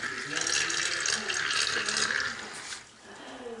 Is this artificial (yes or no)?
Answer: no